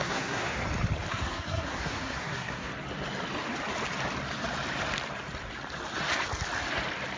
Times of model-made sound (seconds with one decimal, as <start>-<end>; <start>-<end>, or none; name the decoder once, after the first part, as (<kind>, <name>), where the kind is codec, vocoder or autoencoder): 0.0-0.6 (codec, SNAC); 1.1-2.7